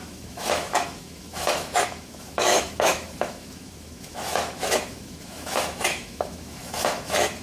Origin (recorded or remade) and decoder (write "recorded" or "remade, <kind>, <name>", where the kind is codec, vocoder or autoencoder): remade, autoencoder, DAC-VAE